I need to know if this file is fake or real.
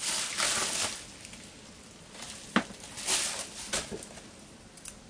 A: real